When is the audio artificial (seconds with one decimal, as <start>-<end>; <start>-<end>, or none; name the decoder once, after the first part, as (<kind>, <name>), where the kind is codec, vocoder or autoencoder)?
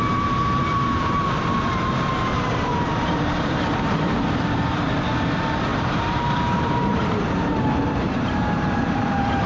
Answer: 0.0-9.5 (vocoder, BigVGAN v2)